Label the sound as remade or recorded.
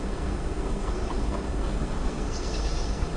remade